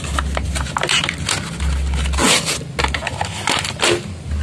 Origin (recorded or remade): recorded